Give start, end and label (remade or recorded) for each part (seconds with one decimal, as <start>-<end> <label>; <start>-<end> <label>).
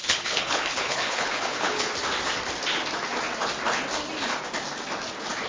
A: 0.0-1.9 remade; 1.9-5.5 recorded